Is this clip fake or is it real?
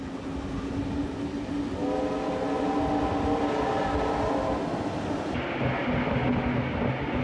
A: real